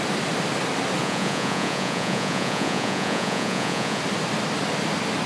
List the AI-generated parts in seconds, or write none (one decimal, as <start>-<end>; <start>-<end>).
1.0-4.0